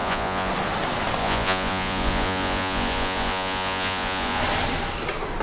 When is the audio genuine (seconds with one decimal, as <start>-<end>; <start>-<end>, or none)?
0.5-1.2; 4.4-5.4